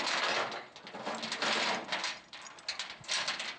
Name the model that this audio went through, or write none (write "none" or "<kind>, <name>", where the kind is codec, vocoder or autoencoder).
none